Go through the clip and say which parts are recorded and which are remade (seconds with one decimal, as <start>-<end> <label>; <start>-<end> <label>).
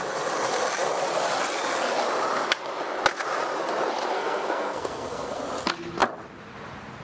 0.0-4.1 recorded; 4.1-5.4 remade; 5.4-7.0 recorded